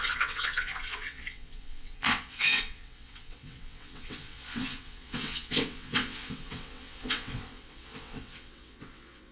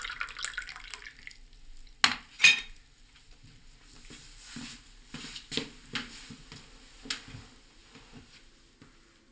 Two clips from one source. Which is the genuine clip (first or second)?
second